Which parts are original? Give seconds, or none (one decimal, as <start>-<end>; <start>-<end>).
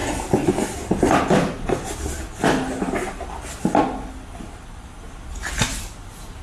0.0-6.4